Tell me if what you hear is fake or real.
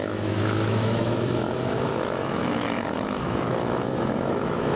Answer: fake